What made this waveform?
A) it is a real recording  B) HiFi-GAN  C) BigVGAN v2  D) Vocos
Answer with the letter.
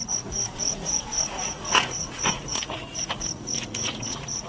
D